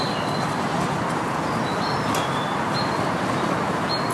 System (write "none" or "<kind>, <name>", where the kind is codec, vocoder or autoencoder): none